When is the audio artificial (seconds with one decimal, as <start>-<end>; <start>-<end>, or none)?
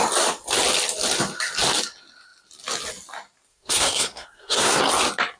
3.5-4.8